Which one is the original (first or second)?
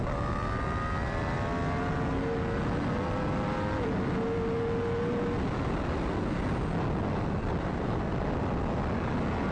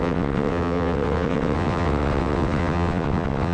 first